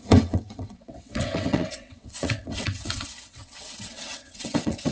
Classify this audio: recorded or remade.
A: remade